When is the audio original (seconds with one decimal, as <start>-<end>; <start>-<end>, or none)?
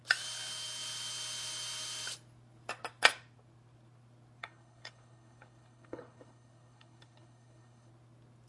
0.0-4.4; 7.9-8.5